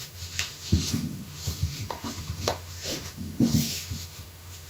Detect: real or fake fake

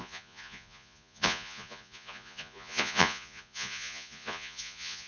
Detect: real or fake fake